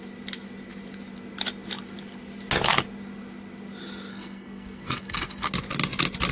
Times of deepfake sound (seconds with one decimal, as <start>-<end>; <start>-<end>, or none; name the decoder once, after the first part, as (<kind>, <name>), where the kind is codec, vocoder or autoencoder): 4.1-5.5 (codec, SNAC)